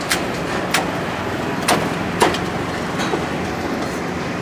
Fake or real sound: real